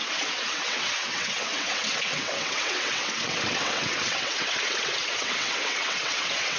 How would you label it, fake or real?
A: fake